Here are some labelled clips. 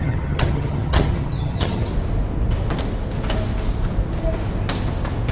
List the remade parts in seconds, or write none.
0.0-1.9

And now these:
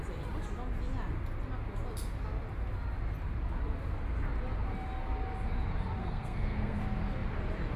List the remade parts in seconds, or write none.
6.0-6.8

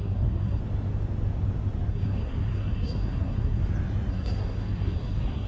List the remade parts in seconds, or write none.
0.0-0.6; 1.9-3.6; 4.1-5.5

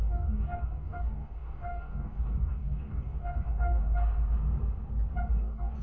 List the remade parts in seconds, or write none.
0.0-3.8; 5.3-5.8

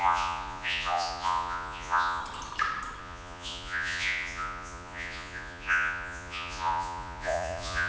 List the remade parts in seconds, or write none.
0.0-2.2; 3.0-7.9

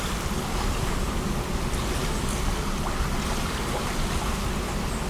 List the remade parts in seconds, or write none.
none

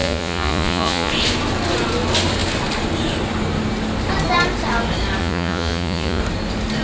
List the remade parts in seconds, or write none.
0.0-1.1; 5.2-6.2